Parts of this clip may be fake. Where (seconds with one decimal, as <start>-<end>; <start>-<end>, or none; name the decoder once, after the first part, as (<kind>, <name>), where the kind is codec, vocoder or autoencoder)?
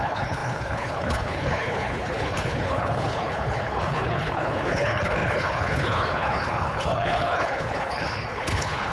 0.0-8.9 (codec, HILCodec)